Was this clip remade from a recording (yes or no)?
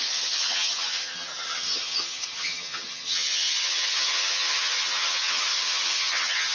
yes